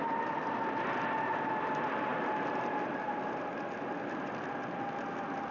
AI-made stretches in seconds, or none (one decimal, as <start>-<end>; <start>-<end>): none